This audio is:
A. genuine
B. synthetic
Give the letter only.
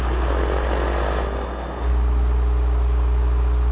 A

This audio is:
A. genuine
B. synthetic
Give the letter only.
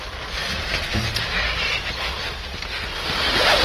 A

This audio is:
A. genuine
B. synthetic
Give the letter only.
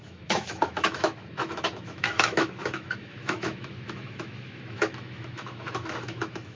B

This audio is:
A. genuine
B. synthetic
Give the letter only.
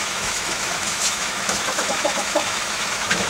B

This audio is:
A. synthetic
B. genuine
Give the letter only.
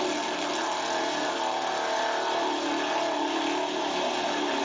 B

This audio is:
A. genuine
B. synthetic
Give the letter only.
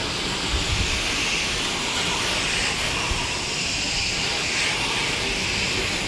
A